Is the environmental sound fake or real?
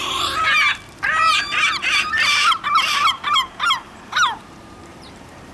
fake